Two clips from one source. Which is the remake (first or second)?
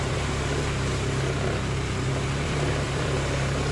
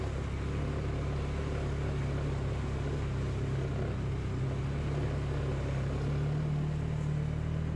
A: first